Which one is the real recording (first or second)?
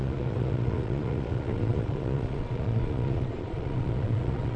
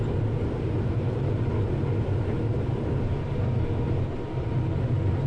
second